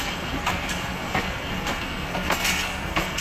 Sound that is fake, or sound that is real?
fake